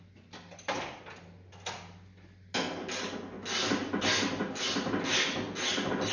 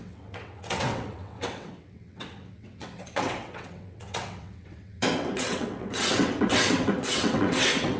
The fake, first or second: second